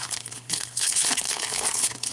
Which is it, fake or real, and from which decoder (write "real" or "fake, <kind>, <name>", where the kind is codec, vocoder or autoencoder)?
fake, codec, HILCodec